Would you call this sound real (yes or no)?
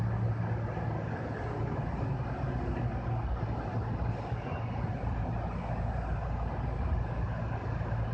yes